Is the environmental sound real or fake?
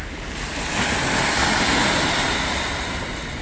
real